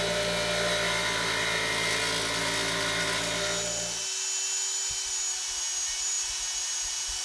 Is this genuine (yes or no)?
yes